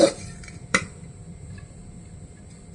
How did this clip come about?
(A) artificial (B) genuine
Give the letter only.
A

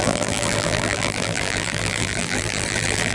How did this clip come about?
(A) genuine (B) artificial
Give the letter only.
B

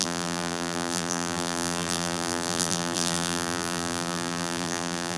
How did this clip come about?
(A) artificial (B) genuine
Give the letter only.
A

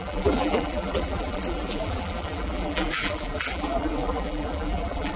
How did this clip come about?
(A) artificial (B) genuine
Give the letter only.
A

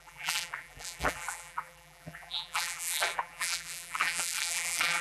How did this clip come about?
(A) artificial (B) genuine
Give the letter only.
A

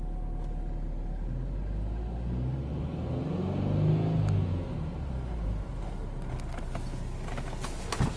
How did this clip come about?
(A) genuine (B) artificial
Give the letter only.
A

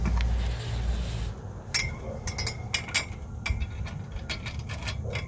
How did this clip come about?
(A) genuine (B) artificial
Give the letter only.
A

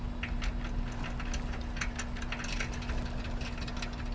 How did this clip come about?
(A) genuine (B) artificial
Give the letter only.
A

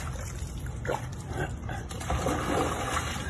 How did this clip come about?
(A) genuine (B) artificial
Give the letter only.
B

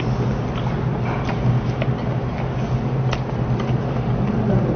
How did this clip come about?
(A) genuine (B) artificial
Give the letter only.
A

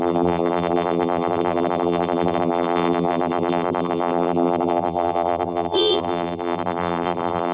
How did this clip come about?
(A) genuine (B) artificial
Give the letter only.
B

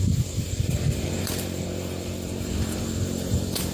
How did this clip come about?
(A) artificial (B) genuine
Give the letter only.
A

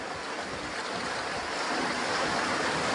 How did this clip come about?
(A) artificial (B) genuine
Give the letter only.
A